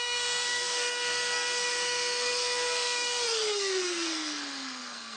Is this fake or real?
fake